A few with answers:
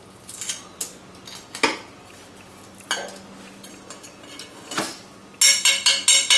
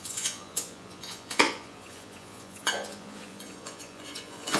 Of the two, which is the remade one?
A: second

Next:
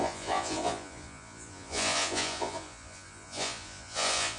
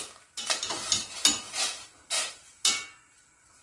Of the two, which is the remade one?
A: first